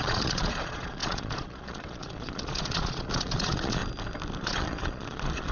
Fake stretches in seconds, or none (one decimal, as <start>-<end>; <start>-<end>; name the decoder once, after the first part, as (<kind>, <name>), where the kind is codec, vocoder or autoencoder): 0.0-3.8 (vocoder, Vocos); 4.4-5.5